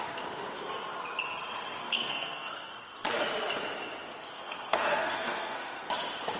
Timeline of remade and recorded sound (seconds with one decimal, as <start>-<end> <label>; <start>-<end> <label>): 0.0-1.8 recorded; 1.8-2.7 remade; 2.7-4.3 recorded; 4.3-5.9 remade; 5.9-6.4 recorded